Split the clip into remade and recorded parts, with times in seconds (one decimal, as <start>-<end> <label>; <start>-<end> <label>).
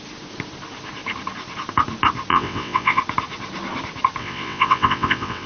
0.0-2.3 recorded; 2.3-3.0 remade; 3.0-4.2 recorded; 4.2-5.5 remade